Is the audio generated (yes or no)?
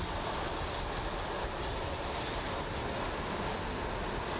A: no